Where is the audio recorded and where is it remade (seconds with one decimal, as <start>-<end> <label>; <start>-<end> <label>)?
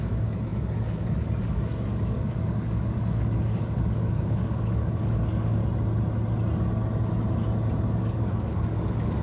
0.0-5.6 remade; 5.6-7.9 recorded; 7.9-9.2 remade